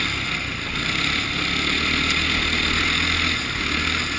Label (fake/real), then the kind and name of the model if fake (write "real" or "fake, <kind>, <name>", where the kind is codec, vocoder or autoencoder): real